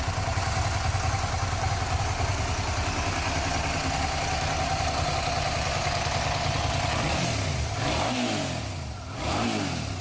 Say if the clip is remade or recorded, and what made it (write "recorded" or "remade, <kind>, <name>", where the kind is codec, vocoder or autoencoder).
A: recorded